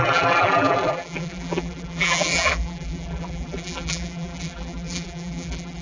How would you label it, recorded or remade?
remade